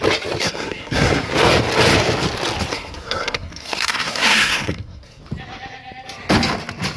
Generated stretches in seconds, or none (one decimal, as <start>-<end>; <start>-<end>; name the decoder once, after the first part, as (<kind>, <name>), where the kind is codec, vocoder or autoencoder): 0.4-1.3 (codec, SNAC); 2.7-5.2